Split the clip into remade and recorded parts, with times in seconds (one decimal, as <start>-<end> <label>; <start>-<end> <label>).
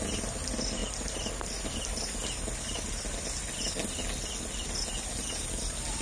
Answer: 0.0-6.0 recorded